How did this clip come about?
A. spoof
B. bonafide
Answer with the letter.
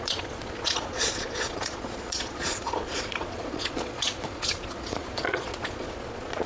A